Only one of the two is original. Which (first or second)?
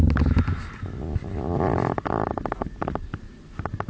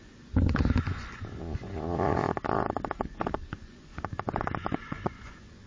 first